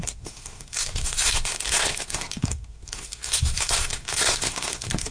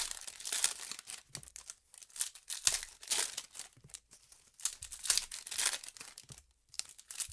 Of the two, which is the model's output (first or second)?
first